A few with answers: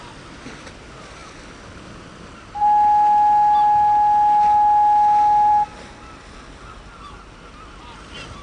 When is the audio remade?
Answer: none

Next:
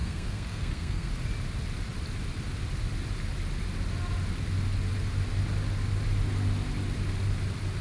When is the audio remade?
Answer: 0.0-1.1

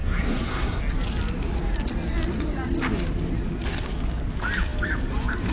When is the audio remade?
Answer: 0.0-0.8